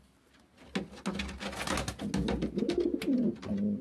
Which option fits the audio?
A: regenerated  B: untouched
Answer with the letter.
B